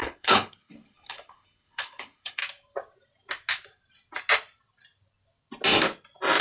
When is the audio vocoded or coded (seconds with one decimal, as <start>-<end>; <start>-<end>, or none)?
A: 0.0-2.4